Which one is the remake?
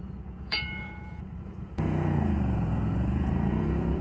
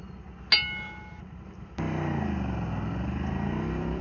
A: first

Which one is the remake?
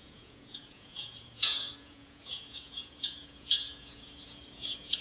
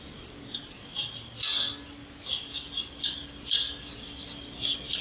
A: first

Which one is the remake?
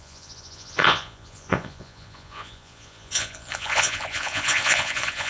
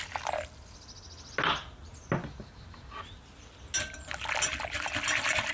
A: first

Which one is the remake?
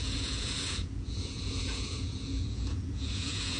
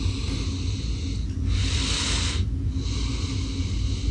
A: first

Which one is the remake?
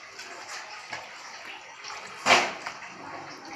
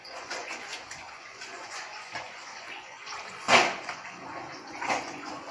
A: second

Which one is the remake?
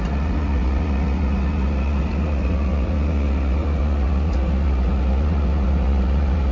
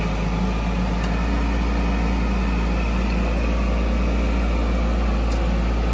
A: first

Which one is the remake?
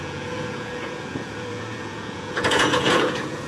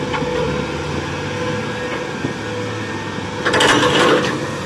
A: first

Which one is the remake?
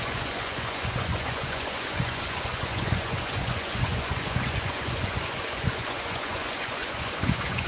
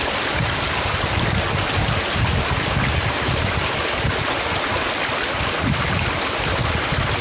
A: first